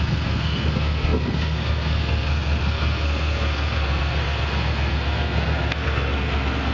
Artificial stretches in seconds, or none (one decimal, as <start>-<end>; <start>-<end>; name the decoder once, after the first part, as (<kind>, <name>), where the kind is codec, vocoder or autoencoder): 0.0-6.7 (codec, SNAC)